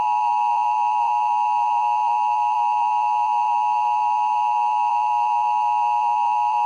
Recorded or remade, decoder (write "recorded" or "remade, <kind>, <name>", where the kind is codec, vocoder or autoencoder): remade, vocoder, BigVGAN v2